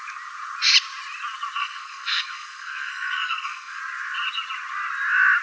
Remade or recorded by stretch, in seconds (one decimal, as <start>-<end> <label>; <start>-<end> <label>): 0.0-1.6 recorded; 1.6-3.8 remade; 3.8-5.4 recorded